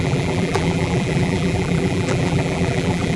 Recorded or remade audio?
remade